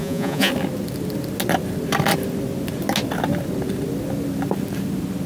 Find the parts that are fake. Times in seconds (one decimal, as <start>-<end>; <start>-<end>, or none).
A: 0.0-0.5